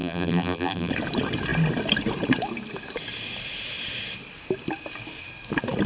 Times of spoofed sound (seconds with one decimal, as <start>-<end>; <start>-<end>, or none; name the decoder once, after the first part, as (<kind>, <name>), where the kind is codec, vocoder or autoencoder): 0.0-0.9 (vocoder, BigVGAN v2)